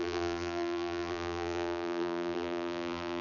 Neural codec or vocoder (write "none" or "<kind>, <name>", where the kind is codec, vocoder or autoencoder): vocoder, BigVGAN v2